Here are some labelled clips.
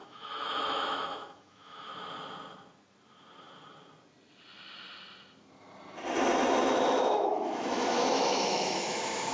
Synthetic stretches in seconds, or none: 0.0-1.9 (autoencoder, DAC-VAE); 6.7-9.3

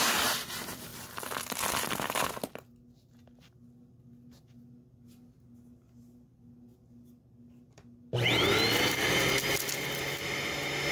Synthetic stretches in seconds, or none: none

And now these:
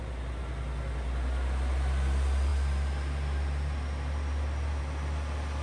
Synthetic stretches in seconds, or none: none

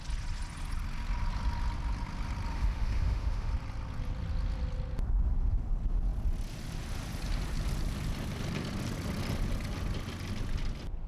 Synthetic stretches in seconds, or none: 2.5-3.5 (autoencoder, DAC-VAE)

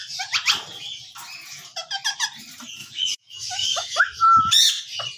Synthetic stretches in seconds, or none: 2.8-4.0 (autoencoder, DAC-VAE)

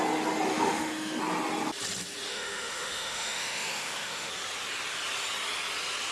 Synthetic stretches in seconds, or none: 0.5-1.2 (autoencoder, DAC-VAE); 2.3-4.3

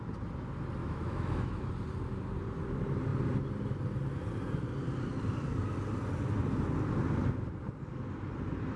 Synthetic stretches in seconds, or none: 0.8-1.7 (autoencoder, DAC-VAE)